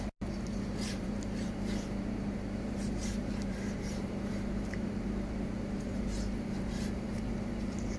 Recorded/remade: remade